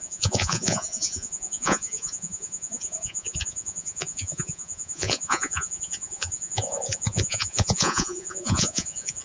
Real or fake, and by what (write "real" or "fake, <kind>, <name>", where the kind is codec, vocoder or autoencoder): fake, vocoder, Vocos